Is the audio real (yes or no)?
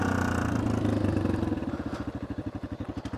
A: yes